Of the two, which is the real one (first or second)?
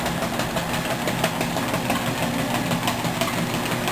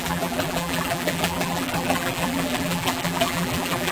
first